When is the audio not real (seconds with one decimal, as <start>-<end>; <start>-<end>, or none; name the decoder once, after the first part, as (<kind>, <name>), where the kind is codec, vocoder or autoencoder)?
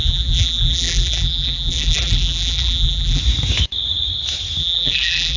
0.0-3.2 (vocoder, BigVGAN v2); 4.6-5.4